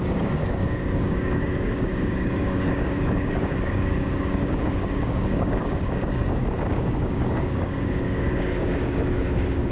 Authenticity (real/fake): fake